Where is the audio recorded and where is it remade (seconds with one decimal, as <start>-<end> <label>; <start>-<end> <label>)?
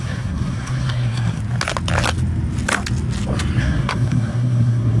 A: 0.0-1.4 remade; 1.4-3.6 recorded; 3.6-5.0 remade